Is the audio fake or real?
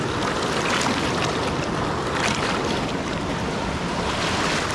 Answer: real